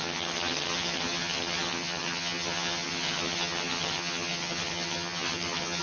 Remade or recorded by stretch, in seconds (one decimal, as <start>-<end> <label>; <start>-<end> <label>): 0.0-5.8 remade